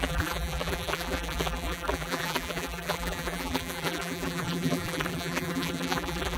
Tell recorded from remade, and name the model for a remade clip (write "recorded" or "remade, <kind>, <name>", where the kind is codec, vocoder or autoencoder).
remade, vocoder, BigVGAN v2